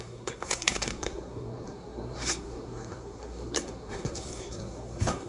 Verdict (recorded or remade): remade